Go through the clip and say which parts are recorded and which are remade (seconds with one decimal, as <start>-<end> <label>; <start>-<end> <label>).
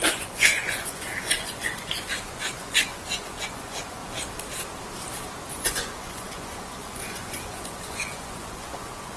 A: 0.0-4.0 remade; 4.0-5.5 recorded; 5.5-9.2 remade